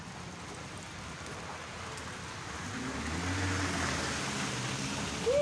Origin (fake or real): real